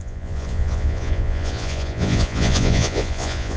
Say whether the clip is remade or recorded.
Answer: remade